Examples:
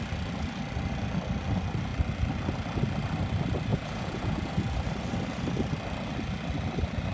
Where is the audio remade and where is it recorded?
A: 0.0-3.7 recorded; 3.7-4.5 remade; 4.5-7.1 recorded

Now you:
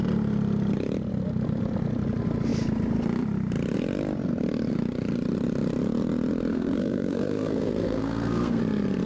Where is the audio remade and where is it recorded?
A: 0.0-6.5 recorded; 6.5-8.6 remade; 8.6-9.1 recorded

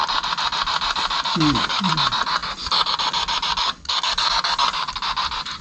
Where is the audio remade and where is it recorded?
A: 0.0-1.3 recorded; 1.3-1.9 remade; 1.9-3.6 recorded; 3.6-4.3 remade; 4.3-5.6 recorded